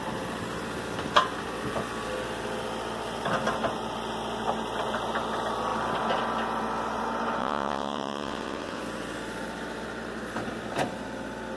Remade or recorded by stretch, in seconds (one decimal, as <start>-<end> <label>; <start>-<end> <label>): 0.0-7.4 recorded; 7.4-8.8 remade; 8.8-11.6 recorded